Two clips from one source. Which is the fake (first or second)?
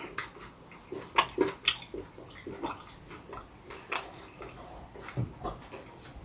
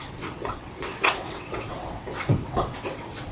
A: second